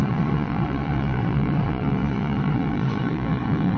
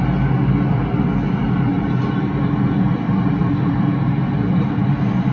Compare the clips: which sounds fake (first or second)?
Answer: first